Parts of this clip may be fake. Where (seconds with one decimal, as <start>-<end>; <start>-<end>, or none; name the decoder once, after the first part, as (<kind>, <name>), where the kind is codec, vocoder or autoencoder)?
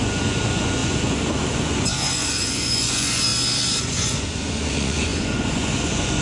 0.0-3.3 (vocoder, Vocos); 3.8-6.2